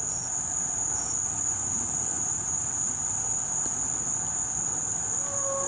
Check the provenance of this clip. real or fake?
real